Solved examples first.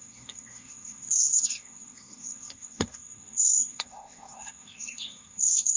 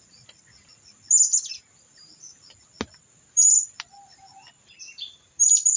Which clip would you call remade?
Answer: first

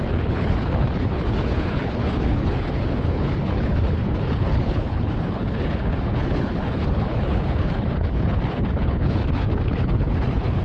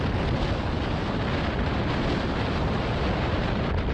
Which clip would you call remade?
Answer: first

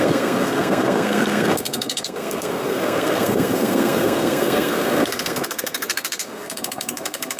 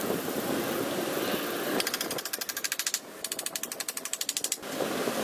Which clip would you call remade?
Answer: first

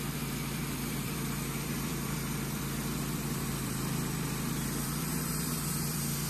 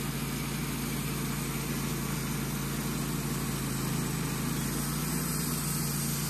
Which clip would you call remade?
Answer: first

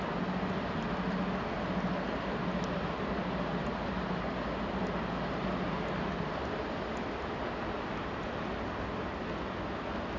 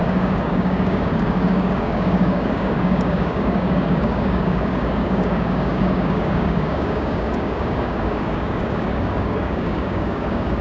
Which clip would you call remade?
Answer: second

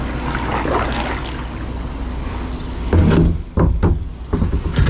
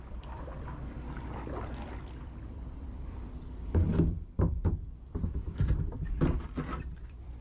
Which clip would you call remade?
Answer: second